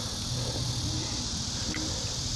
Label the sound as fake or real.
fake